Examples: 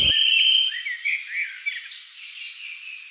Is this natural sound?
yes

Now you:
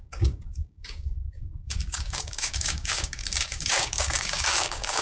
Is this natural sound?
no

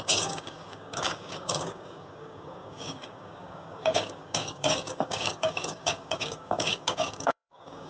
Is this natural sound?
no